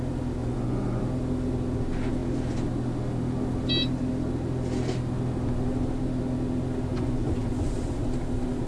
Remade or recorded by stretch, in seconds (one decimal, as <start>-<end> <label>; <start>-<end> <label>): 0.0-0.4 recorded; 0.4-1.0 remade; 1.0-6.9 recorded; 6.9-7.5 remade; 7.5-8.7 recorded